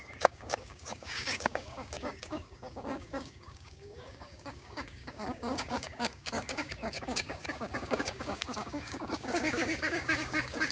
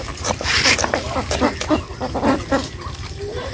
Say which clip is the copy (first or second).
first